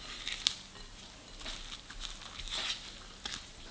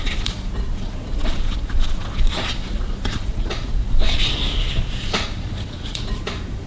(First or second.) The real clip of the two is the first